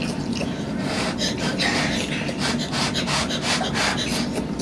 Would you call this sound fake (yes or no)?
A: no